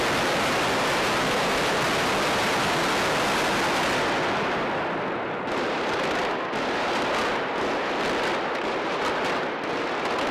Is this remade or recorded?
recorded